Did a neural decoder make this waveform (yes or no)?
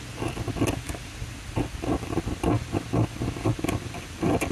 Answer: no